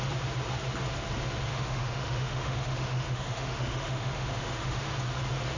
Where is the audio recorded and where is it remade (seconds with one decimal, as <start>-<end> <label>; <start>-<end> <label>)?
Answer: 0.0-1.5 recorded; 1.5-4.9 remade; 4.9-5.6 recorded